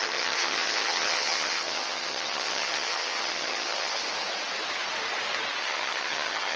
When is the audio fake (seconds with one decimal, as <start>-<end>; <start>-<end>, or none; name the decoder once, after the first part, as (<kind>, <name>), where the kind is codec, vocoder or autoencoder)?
0.0-4.0 (vocoder, HiFi-GAN); 5.6-6.6